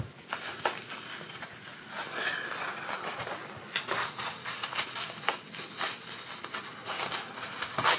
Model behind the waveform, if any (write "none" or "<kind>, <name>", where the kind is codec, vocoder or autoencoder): none